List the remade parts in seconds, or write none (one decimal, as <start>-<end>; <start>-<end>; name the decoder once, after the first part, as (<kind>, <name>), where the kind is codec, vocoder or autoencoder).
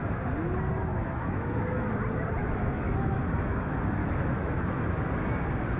0.8-1.9 (autoencoder, DAC-VAE); 2.4-3.2; 4.0-5.1